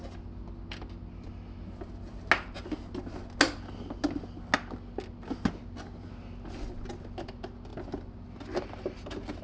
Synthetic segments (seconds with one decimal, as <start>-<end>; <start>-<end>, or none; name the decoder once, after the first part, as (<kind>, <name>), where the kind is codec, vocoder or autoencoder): none